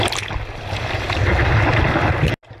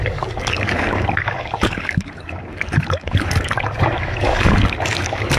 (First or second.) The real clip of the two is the first